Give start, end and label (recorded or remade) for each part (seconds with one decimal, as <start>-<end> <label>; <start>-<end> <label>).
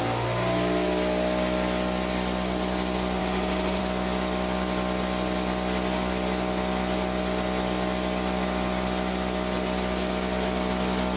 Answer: 0.0-3.2 recorded; 3.2-3.8 remade; 3.8-11.2 recorded